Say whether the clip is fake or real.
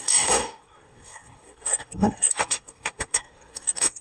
fake